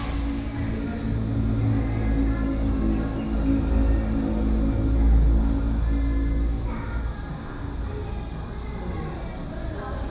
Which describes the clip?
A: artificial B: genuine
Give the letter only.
B